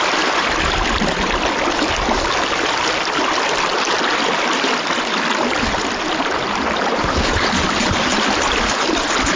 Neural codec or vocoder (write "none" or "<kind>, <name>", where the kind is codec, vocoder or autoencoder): none